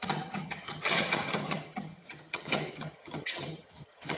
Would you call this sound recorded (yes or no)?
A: no